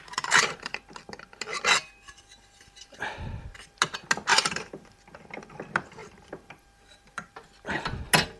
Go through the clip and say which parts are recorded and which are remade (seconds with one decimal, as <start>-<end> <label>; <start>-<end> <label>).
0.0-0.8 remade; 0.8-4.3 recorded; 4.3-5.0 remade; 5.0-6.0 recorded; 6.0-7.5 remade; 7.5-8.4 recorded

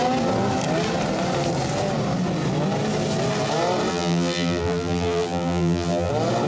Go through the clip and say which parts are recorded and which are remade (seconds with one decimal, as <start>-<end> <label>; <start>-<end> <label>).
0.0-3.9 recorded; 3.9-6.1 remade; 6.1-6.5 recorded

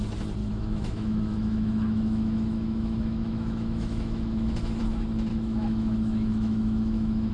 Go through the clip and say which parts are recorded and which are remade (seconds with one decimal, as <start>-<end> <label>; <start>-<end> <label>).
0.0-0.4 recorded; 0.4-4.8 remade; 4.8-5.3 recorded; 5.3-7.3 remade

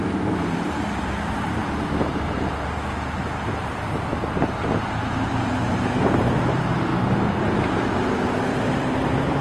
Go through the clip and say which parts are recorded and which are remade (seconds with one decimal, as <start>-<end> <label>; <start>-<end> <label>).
0.0-4.1 remade; 4.1-4.8 recorded; 4.8-6.9 remade; 6.9-8.5 recorded; 8.5-9.4 remade